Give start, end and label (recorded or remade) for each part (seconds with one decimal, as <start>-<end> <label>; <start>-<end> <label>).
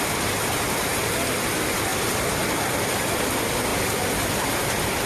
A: 0.0-5.1 recorded